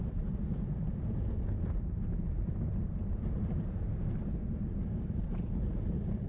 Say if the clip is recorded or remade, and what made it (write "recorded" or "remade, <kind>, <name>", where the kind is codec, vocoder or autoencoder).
remade, vocoder, BigVGAN v2